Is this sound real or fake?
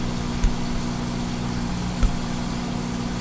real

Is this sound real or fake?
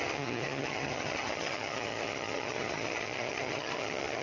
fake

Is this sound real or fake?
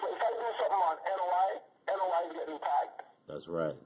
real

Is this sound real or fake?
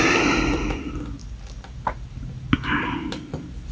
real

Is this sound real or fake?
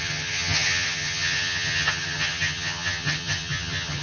fake